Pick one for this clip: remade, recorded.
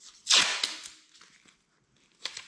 recorded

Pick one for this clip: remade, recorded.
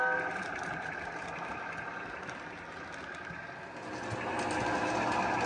recorded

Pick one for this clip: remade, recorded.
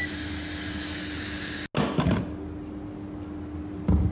recorded